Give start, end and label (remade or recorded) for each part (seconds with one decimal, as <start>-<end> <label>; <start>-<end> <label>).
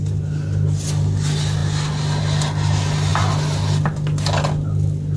0.0-5.2 recorded